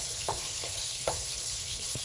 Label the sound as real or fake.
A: fake